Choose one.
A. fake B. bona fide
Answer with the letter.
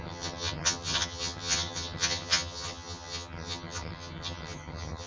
A